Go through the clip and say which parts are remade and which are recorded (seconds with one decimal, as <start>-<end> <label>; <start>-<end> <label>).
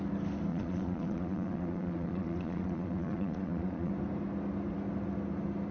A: 0.0-0.5 recorded; 0.5-3.9 remade; 3.9-5.7 recorded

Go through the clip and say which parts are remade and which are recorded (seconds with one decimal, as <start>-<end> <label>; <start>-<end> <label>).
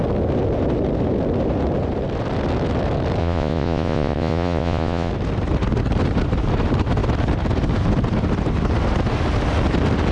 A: 0.0-3.2 recorded; 3.2-5.1 remade; 5.1-10.1 recorded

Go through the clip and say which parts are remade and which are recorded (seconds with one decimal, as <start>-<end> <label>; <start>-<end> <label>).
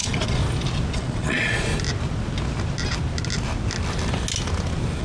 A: 0.0-0.4 remade; 0.4-0.9 recorded; 0.9-1.7 remade; 1.7-5.0 recorded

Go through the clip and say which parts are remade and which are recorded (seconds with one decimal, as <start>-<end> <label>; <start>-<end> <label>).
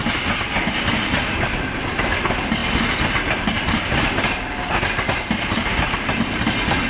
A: 0.0-6.9 recorded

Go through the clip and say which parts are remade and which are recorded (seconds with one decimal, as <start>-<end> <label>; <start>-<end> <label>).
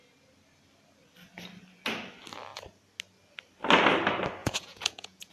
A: 0.0-4.4 recorded; 4.4-5.3 remade